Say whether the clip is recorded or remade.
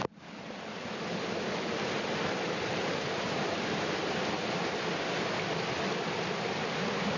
recorded